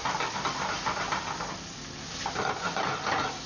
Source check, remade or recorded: recorded